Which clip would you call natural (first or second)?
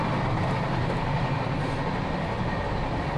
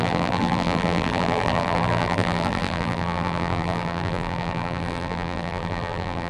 first